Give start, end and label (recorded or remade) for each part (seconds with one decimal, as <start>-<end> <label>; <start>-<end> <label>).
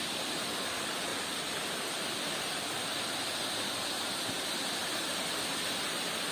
0.0-6.3 recorded